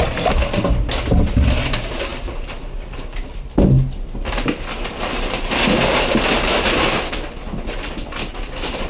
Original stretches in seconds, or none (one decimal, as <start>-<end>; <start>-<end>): 0.0-8.9